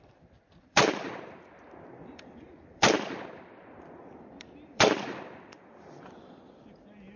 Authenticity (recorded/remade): remade